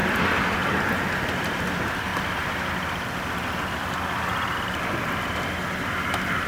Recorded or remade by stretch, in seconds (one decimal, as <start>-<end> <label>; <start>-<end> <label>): 0.0-6.5 recorded